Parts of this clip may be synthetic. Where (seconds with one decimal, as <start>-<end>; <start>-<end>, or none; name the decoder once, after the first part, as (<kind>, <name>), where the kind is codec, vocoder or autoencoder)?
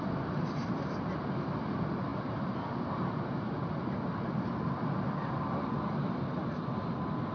none